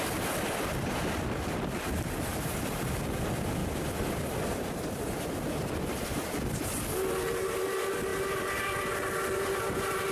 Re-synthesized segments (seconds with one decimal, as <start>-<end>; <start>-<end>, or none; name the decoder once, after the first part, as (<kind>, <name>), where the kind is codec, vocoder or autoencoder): 8.1-8.6 (vocoder, BigVGAN v2)